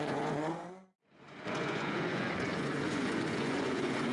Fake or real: fake